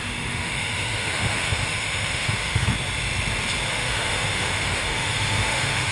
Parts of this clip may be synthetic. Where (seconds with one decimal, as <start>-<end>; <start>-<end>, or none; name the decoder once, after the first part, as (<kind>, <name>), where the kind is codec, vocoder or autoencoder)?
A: 0.0-2.7 (autoencoder, DAC-VAE); 3.7-5.9